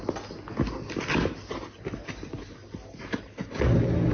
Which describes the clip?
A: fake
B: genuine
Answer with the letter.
B